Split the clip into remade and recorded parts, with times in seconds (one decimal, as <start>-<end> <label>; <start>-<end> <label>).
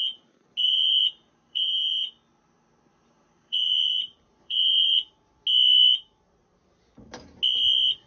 0.0-0.6 recorded; 0.6-2.1 remade; 2.1-2.9 recorded; 2.9-5.1 remade; 5.1-8.1 recorded